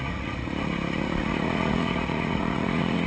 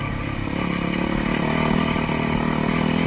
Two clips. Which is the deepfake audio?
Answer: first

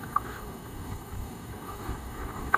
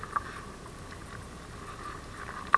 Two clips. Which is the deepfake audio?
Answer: first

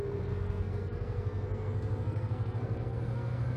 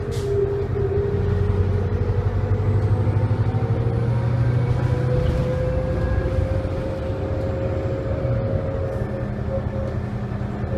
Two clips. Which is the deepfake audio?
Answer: first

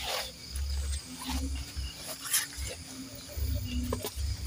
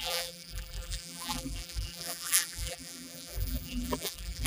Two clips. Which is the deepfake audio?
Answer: second